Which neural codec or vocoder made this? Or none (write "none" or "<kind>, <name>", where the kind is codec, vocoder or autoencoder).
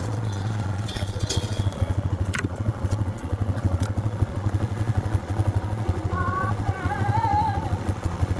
vocoder, Vocos